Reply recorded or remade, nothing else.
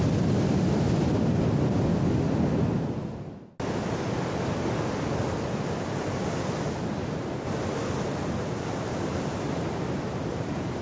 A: recorded